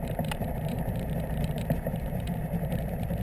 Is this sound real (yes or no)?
no